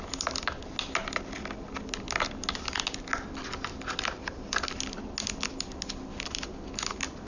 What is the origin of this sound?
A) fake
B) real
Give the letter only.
B